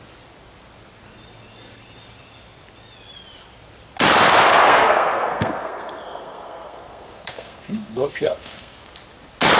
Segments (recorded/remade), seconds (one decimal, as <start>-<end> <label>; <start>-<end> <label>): 0.0-4.7 recorded; 4.7-8.9 remade; 8.9-9.6 recorded